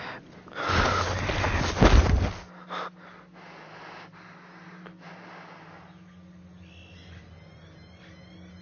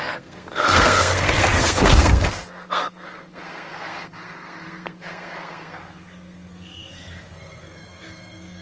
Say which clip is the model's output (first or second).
second